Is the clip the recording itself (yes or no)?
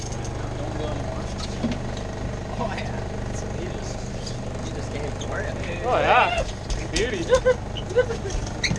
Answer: yes